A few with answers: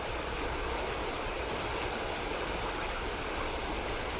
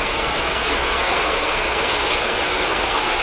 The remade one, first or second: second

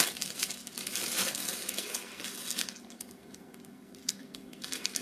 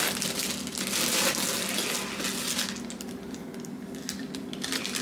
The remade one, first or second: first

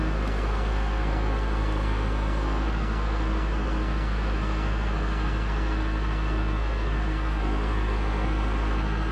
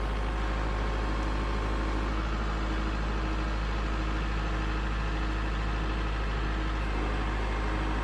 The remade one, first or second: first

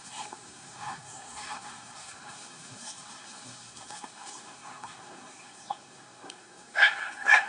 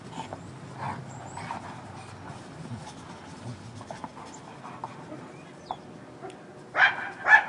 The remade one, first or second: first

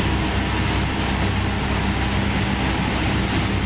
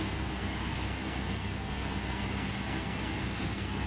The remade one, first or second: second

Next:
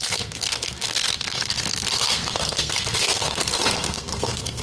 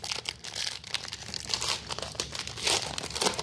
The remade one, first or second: first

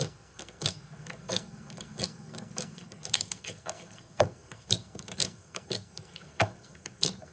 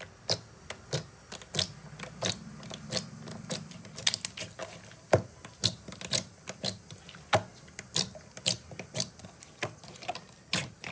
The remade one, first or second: first